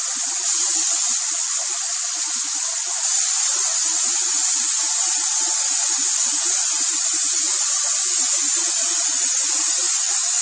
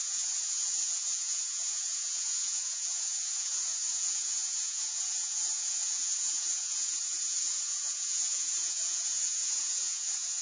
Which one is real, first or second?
first